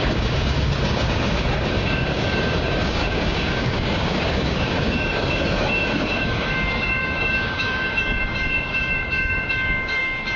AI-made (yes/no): yes